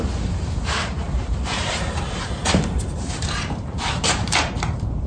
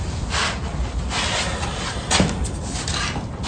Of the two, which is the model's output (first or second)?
first